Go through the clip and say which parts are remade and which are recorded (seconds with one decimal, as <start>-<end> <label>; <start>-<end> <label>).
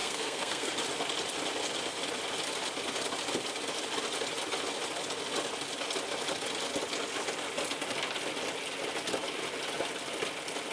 0.0-0.7 remade; 0.7-10.7 recorded